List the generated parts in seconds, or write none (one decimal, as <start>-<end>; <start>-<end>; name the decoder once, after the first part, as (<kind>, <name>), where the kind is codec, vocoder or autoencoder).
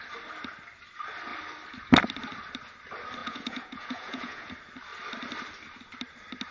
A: 3.2-4.5 (vocoder, Vocos)